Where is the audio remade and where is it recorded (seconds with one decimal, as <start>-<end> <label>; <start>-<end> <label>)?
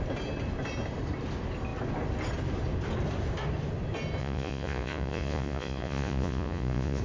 0.0-4.2 recorded; 4.2-7.0 remade